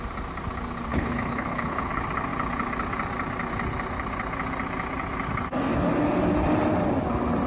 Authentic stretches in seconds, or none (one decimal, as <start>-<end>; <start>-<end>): 0.0-0.9; 1.9-7.5